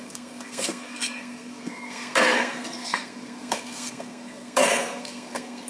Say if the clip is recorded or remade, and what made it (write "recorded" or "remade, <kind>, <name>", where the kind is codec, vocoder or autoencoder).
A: remade, codec, SNAC